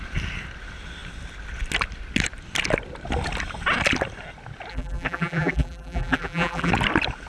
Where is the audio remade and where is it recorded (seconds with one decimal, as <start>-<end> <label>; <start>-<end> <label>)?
0.0-4.7 recorded; 4.7-6.7 remade; 6.7-7.3 recorded